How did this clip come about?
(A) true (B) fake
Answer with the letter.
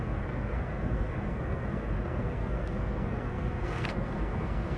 B